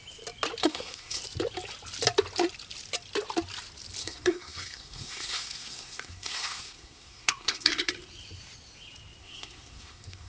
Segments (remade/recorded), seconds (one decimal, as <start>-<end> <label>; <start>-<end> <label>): 0.0-0.6 recorded; 0.6-1.2 remade; 1.2-4.0 recorded; 4.0-7.9 remade; 7.9-9.2 recorded; 9.2-10.3 remade